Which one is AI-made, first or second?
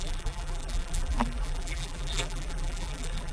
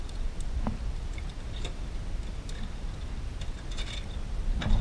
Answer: first